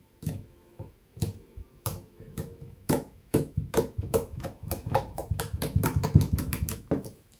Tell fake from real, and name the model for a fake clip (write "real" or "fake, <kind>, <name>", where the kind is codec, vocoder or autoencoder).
fake, autoencoder, DAC-VAE